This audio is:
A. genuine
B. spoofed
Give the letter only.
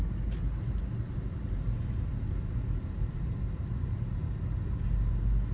A